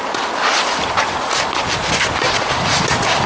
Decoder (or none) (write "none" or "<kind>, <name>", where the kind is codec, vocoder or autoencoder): none